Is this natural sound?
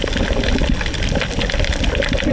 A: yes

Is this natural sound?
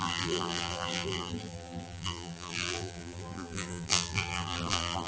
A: no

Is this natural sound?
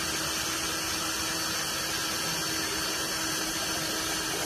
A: yes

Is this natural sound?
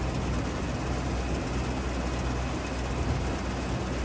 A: yes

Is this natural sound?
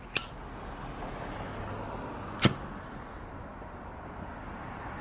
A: yes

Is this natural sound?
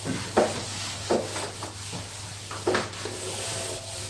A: yes